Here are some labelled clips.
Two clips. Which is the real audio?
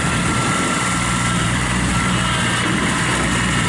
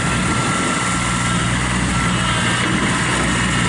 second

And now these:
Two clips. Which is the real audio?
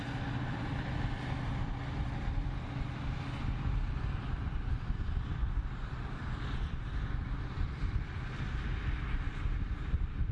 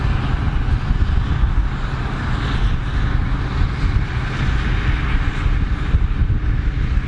second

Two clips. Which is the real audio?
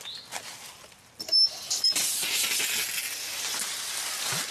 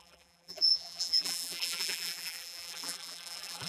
first